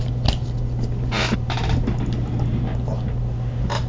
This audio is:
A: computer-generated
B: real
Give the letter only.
B